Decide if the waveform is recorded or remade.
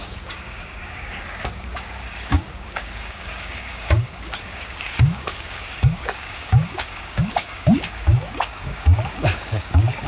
remade